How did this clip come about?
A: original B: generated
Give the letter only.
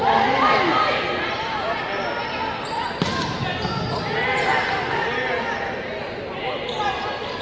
A